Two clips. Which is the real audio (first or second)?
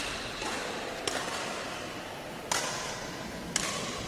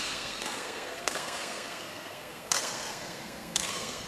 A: first